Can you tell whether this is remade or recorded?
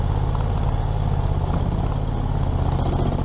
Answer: recorded